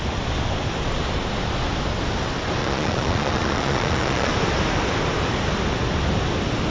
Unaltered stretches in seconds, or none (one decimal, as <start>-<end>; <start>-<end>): 0.0-2.6; 4.3-6.7